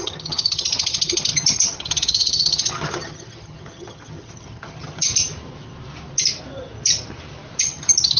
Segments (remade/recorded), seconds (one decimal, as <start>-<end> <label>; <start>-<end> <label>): 0.0-5.1 remade; 5.1-7.6 recorded; 7.6-8.2 remade